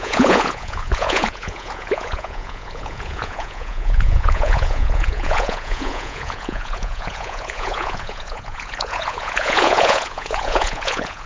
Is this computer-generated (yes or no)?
yes